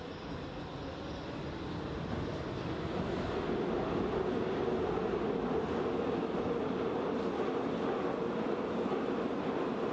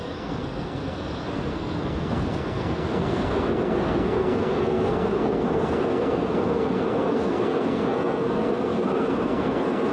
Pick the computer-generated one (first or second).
second